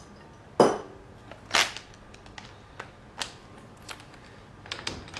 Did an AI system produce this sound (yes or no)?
no